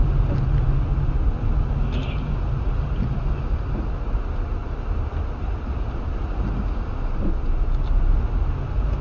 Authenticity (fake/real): real